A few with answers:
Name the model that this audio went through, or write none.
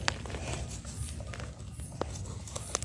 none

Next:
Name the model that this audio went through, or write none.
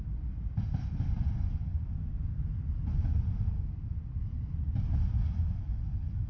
none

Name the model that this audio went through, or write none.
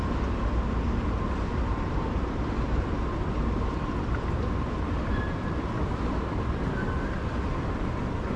none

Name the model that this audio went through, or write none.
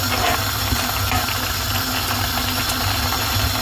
none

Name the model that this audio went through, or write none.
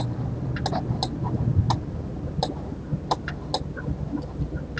none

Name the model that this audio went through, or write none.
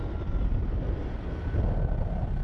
none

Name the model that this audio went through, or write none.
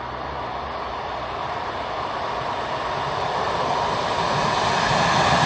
none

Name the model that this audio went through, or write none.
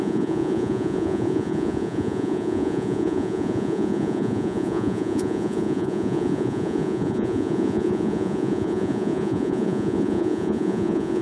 vocoder, Vocos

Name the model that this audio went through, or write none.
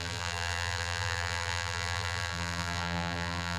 vocoder, BigVGAN v2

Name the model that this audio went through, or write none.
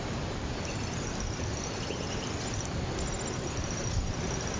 none